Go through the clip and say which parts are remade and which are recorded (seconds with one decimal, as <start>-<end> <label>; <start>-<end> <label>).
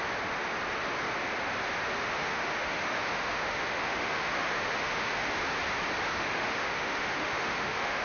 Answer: 0.0-2.0 recorded; 2.0-5.3 remade; 5.3-6.1 recorded; 6.1-8.0 remade